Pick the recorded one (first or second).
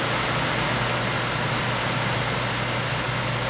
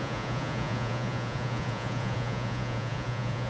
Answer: first